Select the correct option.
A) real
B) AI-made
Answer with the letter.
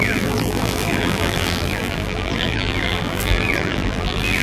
B